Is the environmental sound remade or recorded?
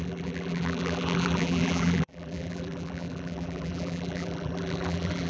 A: remade